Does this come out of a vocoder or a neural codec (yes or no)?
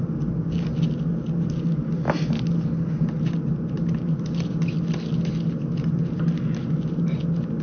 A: no